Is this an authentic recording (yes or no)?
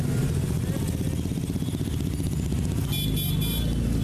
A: yes